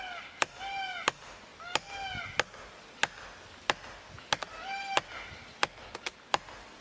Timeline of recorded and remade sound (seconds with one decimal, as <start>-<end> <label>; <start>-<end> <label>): 0.0-6.8 recorded